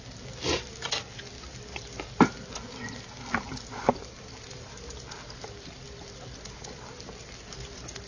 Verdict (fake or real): real